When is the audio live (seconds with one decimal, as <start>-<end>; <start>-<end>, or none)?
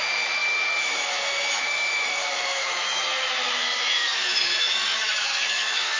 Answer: none